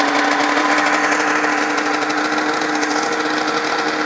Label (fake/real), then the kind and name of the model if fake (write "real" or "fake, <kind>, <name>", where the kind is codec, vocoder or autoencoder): real